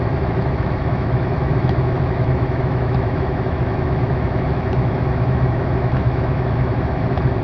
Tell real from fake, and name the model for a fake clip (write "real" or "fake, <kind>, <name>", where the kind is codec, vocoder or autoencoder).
fake, autoencoder, DAC-VAE